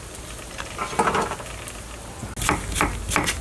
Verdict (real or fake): real